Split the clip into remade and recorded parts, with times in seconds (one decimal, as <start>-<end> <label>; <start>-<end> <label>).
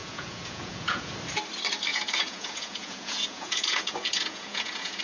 0.0-1.1 remade; 1.1-1.9 recorded; 1.9-5.0 remade